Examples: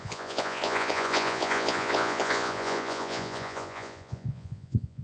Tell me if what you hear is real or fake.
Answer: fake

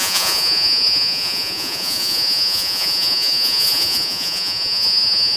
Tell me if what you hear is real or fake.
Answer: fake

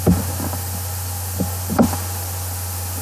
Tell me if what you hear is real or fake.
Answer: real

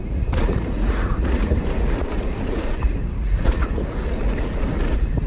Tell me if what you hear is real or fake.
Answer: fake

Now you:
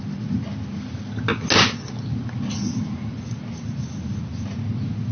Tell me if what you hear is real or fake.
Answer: real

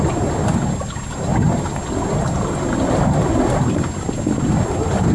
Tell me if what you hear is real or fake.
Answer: real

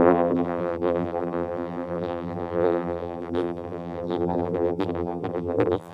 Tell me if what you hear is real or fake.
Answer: fake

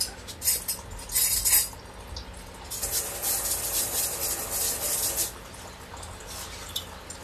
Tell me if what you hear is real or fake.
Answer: real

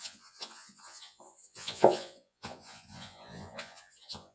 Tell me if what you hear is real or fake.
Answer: fake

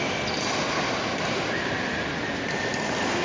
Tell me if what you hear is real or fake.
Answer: real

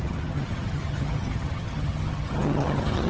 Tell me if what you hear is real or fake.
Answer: fake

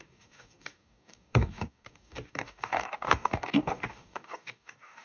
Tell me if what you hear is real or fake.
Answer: fake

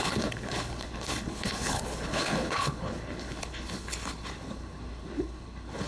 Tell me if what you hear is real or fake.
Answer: fake